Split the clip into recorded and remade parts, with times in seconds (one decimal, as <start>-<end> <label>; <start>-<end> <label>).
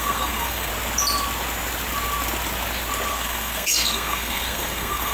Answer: 0.0-0.7 remade; 0.7-3.1 recorded; 3.1-5.1 remade